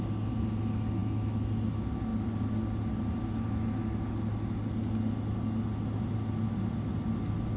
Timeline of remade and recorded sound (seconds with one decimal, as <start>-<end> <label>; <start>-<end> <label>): 0.0-7.6 recorded